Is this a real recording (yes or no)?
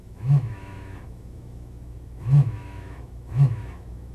no